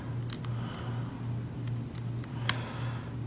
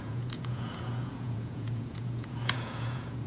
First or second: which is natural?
first